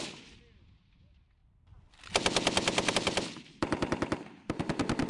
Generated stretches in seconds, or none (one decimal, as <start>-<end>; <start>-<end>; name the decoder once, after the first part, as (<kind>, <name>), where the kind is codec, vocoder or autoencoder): 3.5-4.6 (vocoder, BigVGAN v2)